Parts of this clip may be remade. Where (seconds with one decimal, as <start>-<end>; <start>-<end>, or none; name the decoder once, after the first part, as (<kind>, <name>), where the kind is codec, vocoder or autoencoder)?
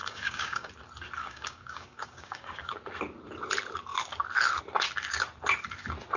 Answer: 0.0-0.7 (codec, DAC); 1.2-2.7